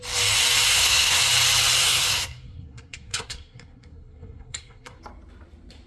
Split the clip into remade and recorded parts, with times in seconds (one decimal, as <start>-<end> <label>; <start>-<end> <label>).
0.0-0.7 recorded; 0.7-1.2 remade; 1.2-1.8 recorded; 1.8-5.0 remade; 5.0-5.9 recorded